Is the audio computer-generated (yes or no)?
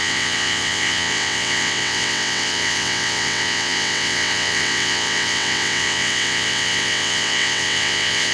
yes